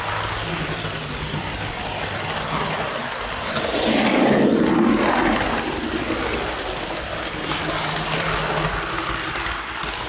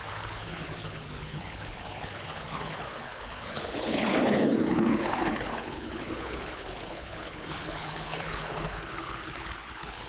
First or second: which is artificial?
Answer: second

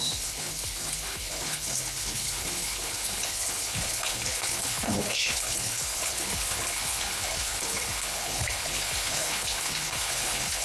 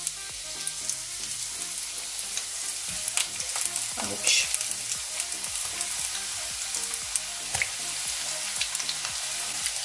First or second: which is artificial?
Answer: first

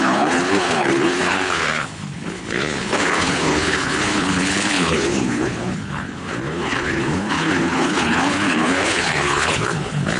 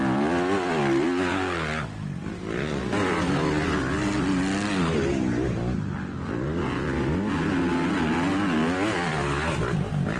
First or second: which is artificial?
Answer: first